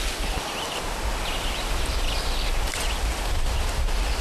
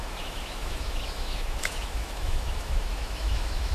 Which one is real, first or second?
first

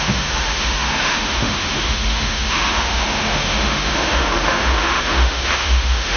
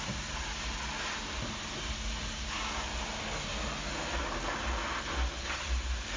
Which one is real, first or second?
second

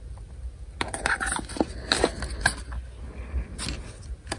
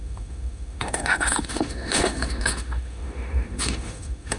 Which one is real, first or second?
first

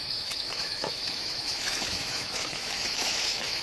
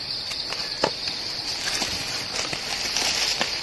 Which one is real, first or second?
second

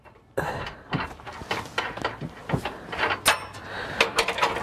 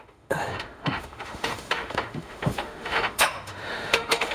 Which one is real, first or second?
first